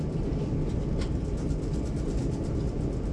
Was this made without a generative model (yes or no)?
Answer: yes